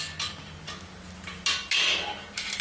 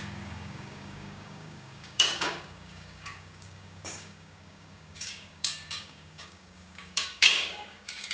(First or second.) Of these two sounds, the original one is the first